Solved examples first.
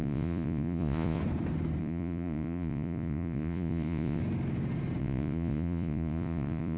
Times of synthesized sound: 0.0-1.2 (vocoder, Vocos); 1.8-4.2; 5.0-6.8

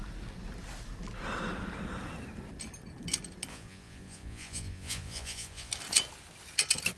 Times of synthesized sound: 3.5-5.7 (vocoder, Vocos)

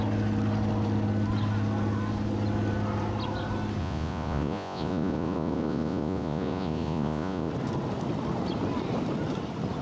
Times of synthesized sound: 3.8-7.5 (vocoder, Vocos)

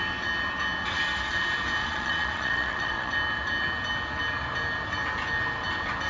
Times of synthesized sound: 1.8-3.1 (vocoder, Vocos)

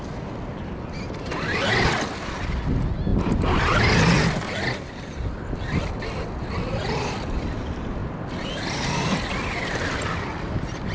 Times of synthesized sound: none